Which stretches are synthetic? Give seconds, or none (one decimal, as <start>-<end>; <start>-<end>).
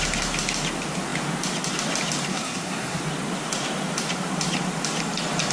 2.3-3.0